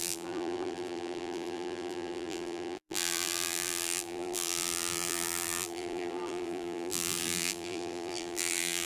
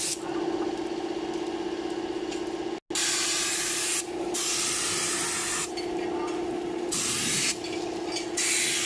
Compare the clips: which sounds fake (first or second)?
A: first